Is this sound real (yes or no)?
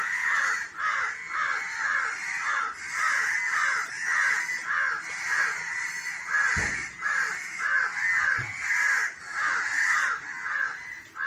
yes